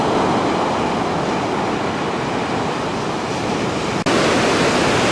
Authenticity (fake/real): real